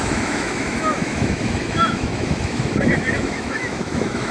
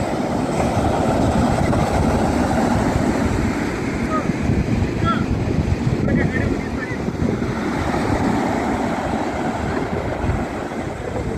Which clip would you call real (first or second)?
second